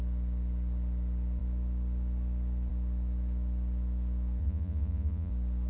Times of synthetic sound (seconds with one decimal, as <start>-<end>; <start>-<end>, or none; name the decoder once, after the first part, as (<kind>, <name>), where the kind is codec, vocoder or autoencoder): 4.4-5.3 (vocoder, Vocos)